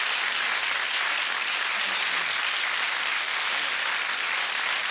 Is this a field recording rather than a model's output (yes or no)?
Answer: yes